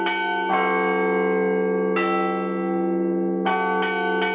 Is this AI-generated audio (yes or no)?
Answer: no